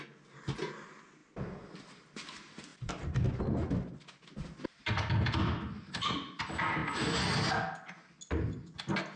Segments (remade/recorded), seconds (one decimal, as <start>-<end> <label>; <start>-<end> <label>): 0.0-2.7 recorded; 2.7-3.3 remade; 3.3-5.4 recorded; 5.4-6.1 remade; 6.1-9.2 recorded